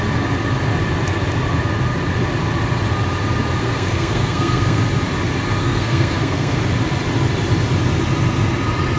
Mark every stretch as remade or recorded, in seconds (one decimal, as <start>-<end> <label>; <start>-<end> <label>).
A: 0.0-3.6 recorded; 3.6-4.8 remade; 4.8-5.6 recorded; 5.6-6.6 remade; 6.6-9.0 recorded